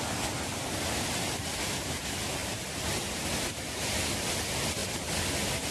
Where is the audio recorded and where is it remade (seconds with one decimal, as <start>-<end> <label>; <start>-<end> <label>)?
0.0-1.5 recorded; 1.5-2.0 remade; 2.0-2.4 recorded; 2.4-3.6 remade; 3.6-5.7 recorded